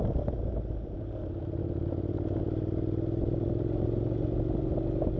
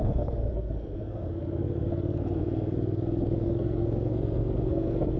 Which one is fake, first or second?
second